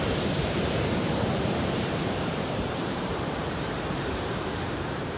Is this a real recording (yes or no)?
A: no